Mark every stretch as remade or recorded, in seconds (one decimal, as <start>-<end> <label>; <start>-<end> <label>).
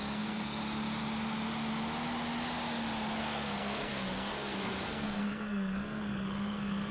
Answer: 0.0-0.6 remade; 0.6-3.2 recorded; 3.2-6.9 remade